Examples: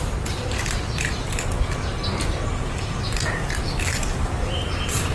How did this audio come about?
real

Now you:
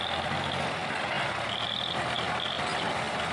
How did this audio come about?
real